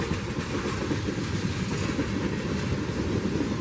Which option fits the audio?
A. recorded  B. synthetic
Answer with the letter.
A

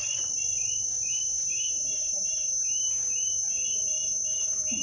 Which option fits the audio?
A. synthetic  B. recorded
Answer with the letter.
B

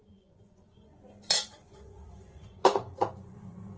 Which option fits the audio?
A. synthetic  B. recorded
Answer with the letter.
A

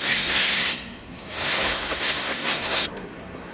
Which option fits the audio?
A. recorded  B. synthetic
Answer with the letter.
B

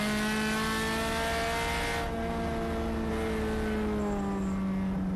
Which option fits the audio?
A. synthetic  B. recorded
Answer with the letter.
B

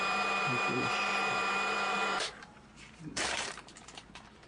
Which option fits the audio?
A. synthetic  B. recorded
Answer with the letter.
A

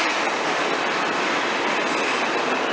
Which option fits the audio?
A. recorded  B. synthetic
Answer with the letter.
A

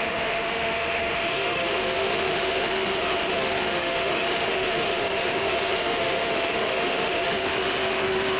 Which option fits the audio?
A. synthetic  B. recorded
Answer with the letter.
A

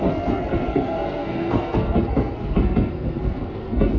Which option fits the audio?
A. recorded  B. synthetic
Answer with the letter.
B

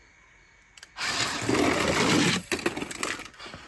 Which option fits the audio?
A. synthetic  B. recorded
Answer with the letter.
B